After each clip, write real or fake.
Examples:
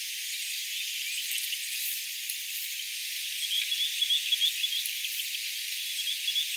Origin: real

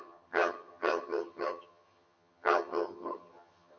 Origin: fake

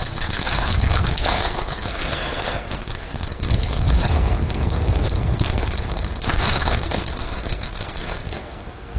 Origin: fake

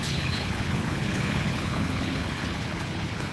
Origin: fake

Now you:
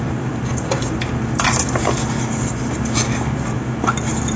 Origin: real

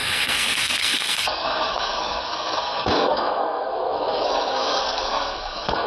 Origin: fake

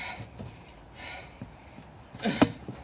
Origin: real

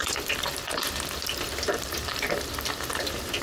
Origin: fake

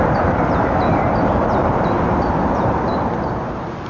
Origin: fake